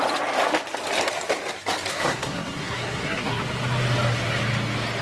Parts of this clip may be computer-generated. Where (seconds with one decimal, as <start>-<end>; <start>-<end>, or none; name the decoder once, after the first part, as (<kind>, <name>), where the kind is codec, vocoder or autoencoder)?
1.9-3.4 (codec, SNAC)